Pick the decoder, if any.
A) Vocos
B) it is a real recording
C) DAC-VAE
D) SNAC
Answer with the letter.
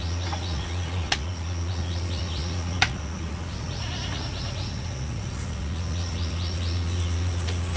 A